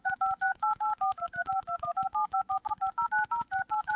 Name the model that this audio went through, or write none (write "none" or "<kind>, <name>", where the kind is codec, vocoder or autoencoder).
autoencoder, DAC-VAE